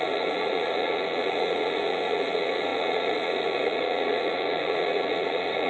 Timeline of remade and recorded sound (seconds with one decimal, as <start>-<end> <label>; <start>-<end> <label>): 0.0-5.7 remade